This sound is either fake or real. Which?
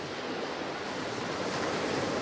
real